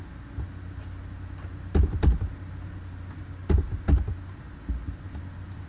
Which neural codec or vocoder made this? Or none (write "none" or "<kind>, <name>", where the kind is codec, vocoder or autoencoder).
none